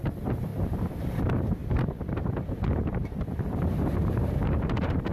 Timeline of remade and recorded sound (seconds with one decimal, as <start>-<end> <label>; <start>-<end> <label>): 0.0-0.5 remade; 0.5-1.0 recorded; 1.0-5.1 remade